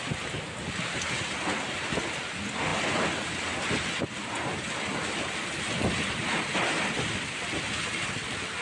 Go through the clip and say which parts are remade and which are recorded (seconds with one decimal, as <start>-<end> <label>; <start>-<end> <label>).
0.0-8.6 recorded